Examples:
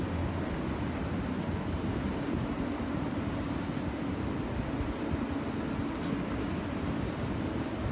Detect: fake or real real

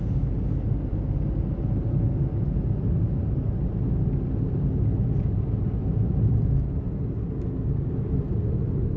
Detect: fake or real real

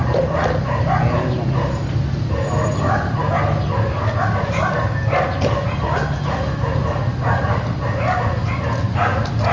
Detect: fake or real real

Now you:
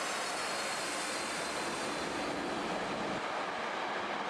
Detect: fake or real real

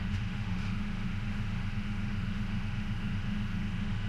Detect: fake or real fake